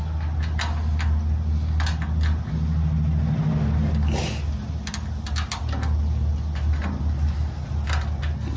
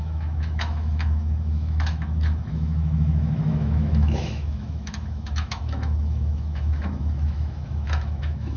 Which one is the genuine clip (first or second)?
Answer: first